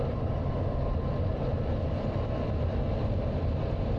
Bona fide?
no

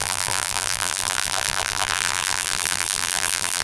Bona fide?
no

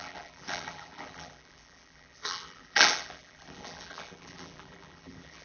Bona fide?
no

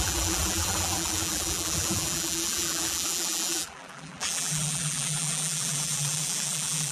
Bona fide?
no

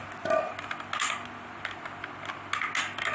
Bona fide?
yes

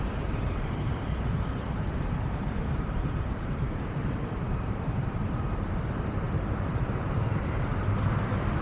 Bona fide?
no